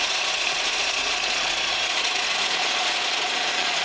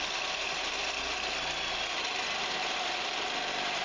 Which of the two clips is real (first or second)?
second